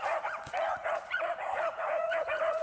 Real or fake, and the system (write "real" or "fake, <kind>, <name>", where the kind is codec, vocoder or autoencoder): fake, vocoder, Vocos